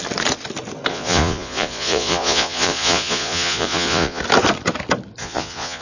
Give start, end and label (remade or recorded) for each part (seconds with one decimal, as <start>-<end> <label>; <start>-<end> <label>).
0.0-0.9 recorded; 0.9-4.2 remade; 4.2-5.2 recorded; 5.2-5.8 remade